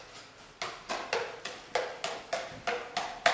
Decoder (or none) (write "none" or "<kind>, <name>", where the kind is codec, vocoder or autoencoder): none